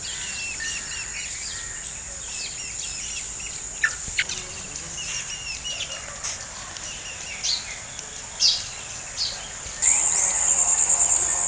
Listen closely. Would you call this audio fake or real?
real